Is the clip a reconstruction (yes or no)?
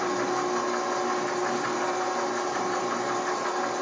no